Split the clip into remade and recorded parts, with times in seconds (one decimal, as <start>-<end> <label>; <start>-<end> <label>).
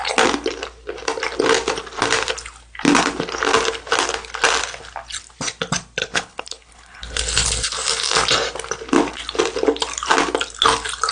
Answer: 0.0-6.0 recorded; 6.0-7.2 remade; 7.2-11.1 recorded